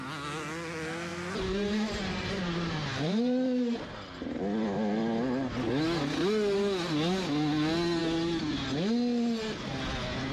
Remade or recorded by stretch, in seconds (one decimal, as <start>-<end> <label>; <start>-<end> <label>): 0.0-1.1 recorded; 1.1-4.4 remade; 4.4-10.3 recorded